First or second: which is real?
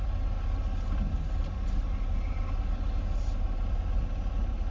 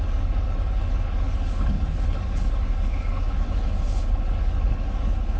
first